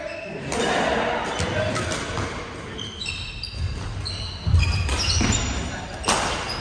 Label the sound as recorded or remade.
recorded